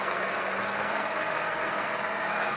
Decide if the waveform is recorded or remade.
remade